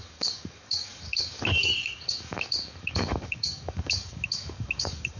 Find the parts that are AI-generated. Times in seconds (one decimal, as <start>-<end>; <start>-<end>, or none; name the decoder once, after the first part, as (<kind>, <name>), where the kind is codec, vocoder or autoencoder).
0.0-5.2 (codec, DAC)